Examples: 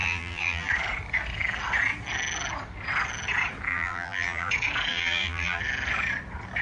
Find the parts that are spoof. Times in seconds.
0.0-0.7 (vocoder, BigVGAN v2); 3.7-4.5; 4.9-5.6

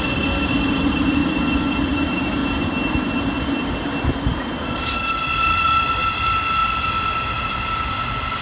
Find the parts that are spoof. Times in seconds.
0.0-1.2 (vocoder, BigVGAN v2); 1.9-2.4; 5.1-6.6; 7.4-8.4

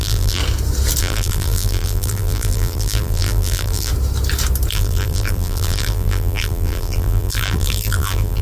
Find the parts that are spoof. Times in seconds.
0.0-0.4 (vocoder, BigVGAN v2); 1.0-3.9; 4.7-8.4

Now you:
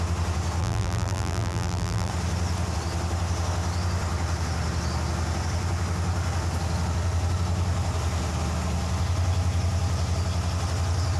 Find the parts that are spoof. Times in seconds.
0.6-2.1 (vocoder, BigVGAN v2)